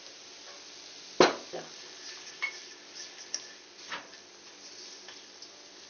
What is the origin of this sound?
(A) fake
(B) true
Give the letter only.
B